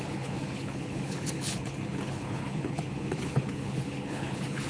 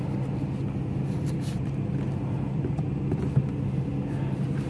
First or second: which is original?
second